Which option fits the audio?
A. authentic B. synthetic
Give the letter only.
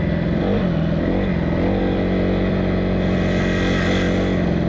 A